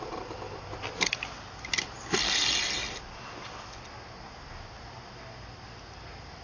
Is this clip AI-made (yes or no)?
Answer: no